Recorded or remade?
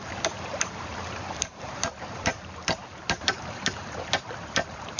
remade